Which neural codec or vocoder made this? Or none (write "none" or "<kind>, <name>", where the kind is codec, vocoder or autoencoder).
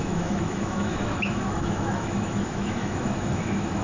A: autoencoder, DAC-VAE